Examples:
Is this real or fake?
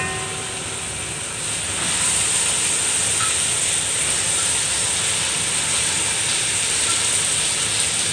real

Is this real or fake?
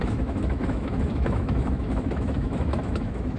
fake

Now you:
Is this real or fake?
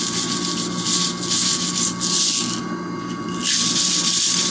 real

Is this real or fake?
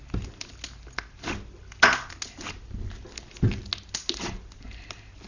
real